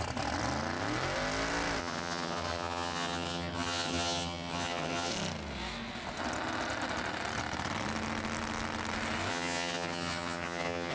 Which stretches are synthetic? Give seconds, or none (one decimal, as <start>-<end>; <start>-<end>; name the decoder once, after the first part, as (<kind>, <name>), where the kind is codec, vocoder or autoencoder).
1.8-5.1 (vocoder, HiFi-GAN); 9.3-10.9